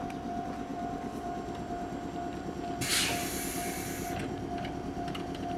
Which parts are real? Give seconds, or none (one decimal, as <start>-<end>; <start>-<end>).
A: 0.0-5.6